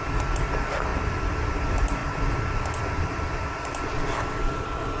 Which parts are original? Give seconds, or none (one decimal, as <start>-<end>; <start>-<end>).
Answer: 0.0-2.0